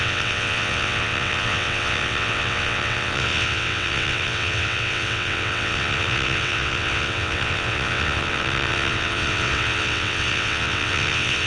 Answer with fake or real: fake